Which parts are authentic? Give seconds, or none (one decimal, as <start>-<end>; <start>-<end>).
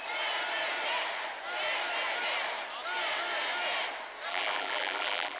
0.0-4.3